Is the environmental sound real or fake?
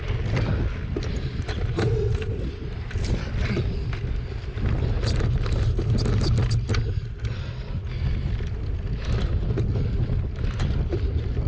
real